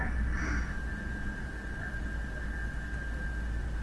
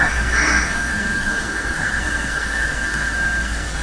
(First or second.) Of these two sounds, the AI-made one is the second